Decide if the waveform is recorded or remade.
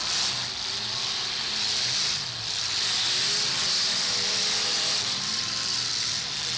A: recorded